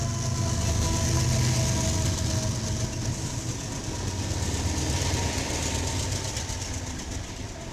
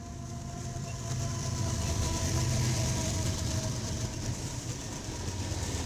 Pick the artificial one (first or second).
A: second